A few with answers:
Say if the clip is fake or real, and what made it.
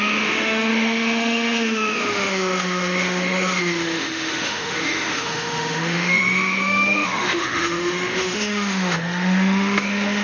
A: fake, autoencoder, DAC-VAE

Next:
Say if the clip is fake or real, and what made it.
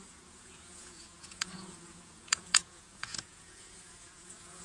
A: fake, vocoder, Vocos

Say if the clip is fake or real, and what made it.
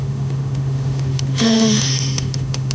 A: fake, autoencoder, DAC-VAE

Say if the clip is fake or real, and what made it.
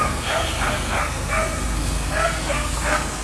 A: fake, codec, SNAC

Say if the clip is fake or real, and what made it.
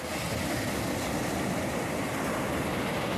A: real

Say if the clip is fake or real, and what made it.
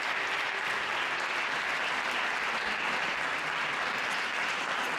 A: real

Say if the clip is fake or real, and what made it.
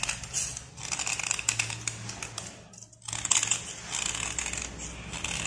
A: real